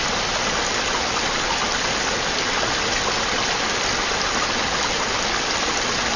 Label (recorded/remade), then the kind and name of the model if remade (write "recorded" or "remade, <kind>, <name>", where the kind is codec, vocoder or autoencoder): recorded